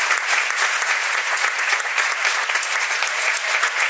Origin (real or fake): fake